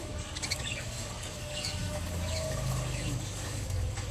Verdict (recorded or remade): remade